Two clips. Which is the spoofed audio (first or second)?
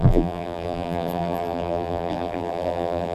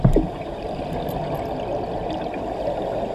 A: first